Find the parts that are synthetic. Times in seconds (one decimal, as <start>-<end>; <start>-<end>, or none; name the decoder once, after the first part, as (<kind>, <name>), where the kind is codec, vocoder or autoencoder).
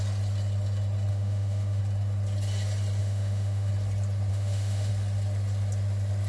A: 1.1-1.8 (autoencoder, DAC-VAE); 3.0-3.7; 4.3-4.9